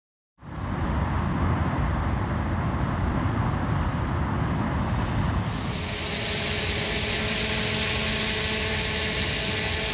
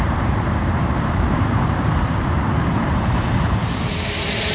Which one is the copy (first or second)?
second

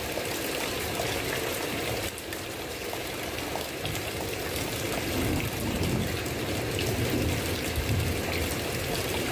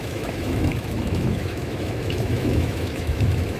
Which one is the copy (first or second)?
second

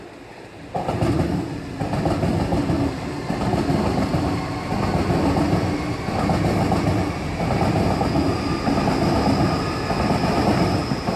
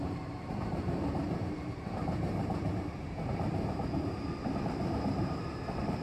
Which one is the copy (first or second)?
second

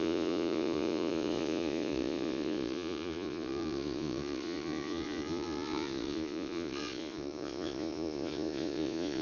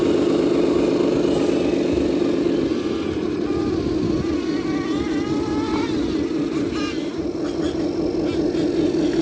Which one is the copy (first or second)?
first